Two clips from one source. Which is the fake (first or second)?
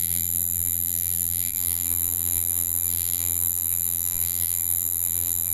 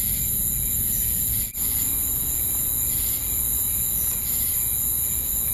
first